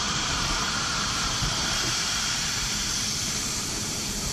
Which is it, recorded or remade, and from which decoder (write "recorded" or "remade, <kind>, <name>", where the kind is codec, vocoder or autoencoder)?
remade, vocoder, BigVGAN v2